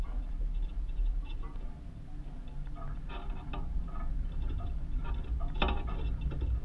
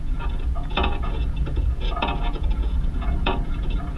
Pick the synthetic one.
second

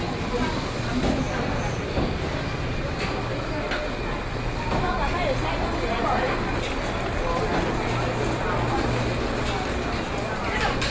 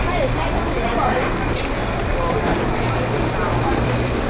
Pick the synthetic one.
second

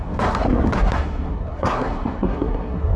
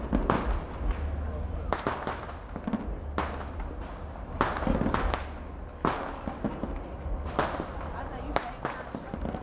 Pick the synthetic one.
first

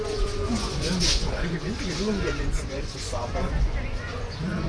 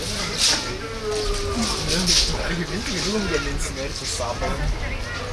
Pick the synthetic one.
first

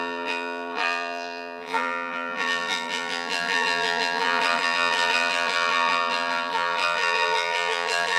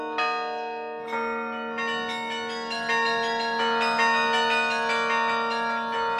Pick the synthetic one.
first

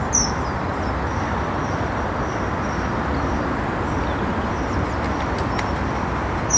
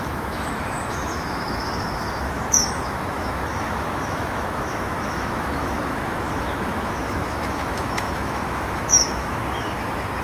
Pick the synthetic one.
second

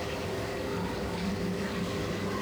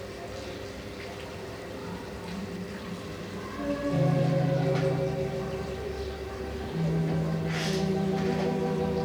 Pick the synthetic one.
first